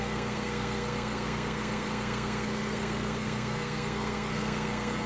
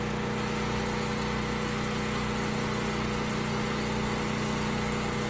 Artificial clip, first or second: first